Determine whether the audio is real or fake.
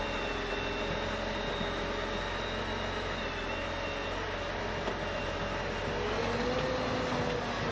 real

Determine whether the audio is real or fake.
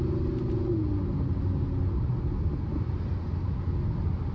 real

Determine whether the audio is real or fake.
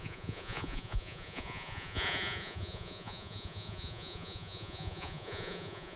fake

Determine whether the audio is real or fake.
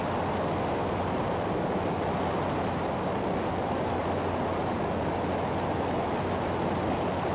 real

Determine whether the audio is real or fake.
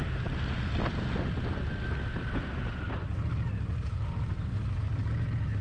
real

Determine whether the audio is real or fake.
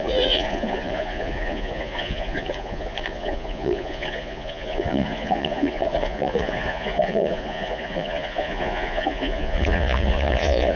fake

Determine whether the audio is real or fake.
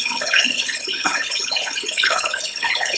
fake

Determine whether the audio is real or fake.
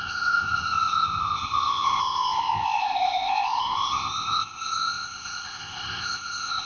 fake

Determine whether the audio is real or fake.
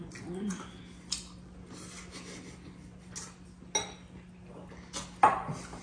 real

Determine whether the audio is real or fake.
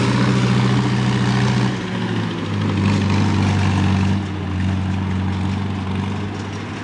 real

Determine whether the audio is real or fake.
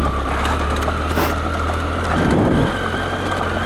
real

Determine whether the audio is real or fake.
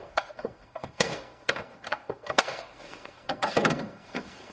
fake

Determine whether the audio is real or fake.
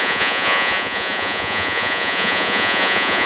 fake